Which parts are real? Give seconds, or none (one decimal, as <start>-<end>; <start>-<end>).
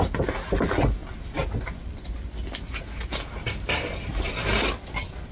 0.0-5.3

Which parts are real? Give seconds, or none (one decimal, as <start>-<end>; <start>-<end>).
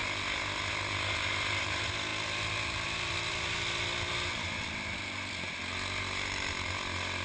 0.0-2.1; 3.3-7.2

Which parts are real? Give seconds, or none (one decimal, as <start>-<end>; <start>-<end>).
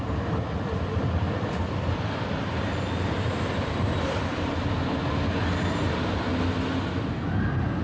0.0-7.8